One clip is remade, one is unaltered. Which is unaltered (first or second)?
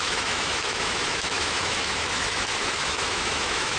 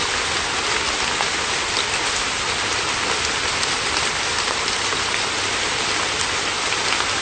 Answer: second